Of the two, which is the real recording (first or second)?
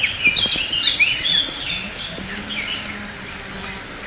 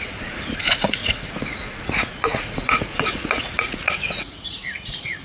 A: first